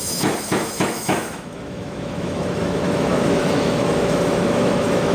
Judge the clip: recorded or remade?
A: remade